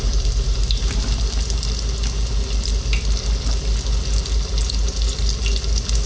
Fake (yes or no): no